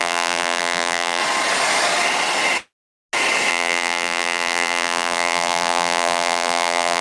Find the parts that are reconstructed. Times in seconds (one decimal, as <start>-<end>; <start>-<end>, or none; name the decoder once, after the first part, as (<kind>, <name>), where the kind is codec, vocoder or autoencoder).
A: 0.0-1.2 (vocoder, BigVGAN v2); 3.5-7.0